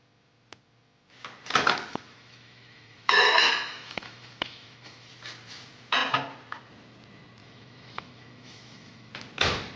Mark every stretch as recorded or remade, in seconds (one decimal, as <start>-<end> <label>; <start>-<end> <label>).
0.0-1.9 recorded; 1.9-5.1 remade; 5.1-7.4 recorded; 7.4-9.1 remade; 9.1-9.8 recorded